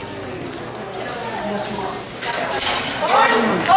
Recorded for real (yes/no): yes